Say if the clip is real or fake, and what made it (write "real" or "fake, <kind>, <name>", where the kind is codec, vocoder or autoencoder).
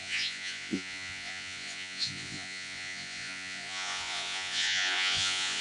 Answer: fake, vocoder, Vocos